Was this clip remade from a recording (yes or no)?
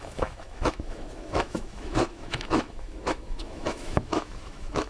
yes